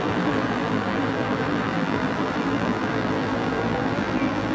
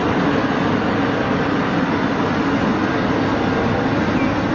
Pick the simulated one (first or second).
first